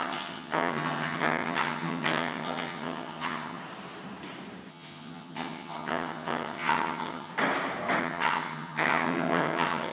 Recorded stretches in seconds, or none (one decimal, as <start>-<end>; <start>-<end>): 3.6-4.7; 7.3-8.0